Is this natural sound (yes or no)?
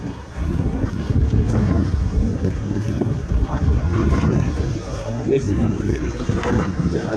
no